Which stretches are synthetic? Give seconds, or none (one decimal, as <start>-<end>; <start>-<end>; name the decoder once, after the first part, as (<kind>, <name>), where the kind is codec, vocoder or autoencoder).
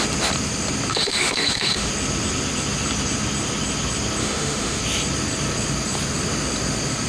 0.9-1.9 (autoencoder, DAC-VAE); 4.2-4.8